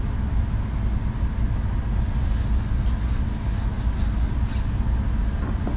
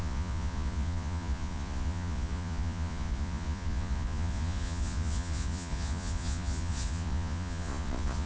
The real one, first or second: first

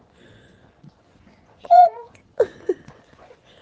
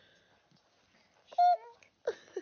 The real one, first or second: second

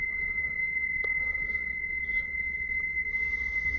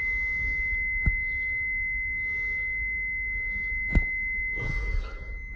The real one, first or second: second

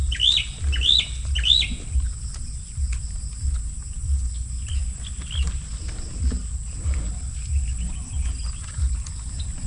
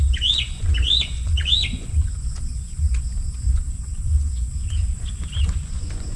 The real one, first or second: first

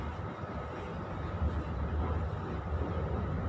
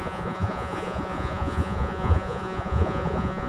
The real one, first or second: first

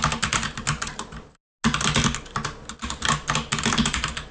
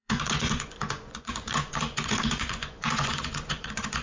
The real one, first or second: first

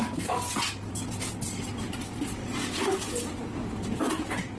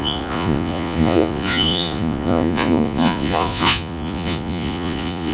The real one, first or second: first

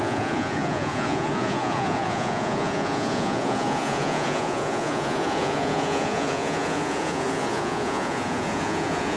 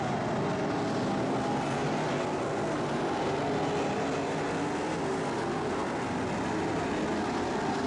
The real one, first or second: second